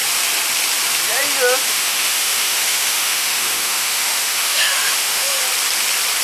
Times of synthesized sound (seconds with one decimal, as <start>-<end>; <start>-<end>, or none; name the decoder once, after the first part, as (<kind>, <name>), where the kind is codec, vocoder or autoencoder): 1.7-5.4 (autoencoder, DAC-VAE)